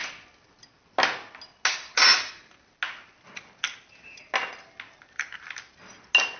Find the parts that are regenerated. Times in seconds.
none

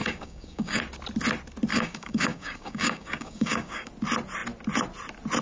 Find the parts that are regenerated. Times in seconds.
0.0-0.8 (codec, DAC); 1.7-3.9